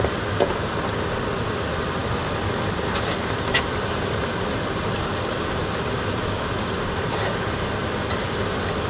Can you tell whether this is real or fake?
real